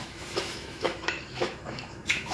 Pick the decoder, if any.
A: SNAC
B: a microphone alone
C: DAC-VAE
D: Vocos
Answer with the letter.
C